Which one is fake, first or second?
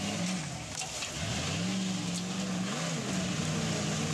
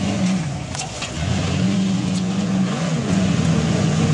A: second